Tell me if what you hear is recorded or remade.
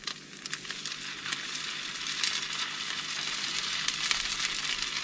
recorded